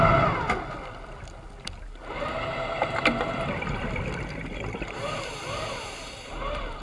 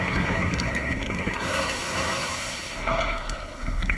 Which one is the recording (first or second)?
first